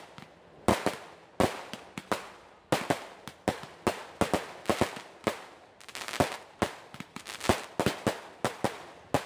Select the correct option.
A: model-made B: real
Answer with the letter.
B